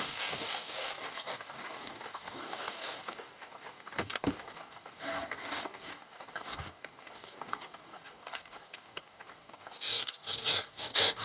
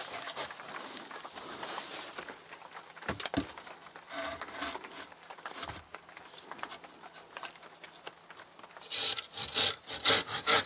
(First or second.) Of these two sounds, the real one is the second